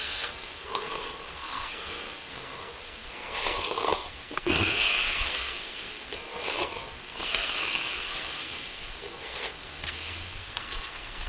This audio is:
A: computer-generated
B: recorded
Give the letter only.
A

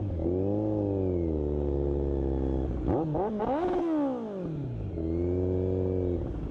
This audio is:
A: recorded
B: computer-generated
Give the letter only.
A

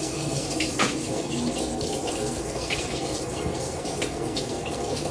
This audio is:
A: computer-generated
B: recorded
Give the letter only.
A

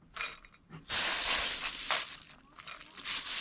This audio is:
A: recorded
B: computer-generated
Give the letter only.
A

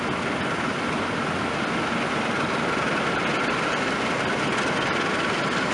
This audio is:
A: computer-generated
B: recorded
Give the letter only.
B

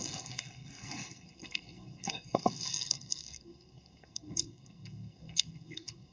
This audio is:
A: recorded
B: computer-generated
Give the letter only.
B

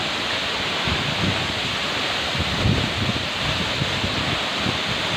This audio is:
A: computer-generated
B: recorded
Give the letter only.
B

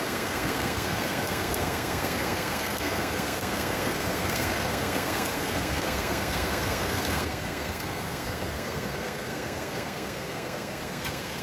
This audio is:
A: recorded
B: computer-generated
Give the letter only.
B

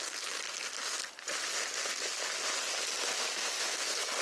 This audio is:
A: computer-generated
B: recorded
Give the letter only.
B